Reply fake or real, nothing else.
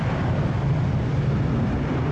real